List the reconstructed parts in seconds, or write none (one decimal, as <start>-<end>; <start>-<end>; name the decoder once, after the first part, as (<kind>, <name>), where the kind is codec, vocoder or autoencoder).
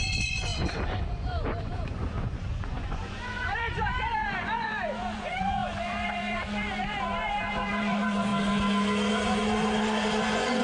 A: 0.0-8.3 (vocoder, Vocos); 9.1-10.6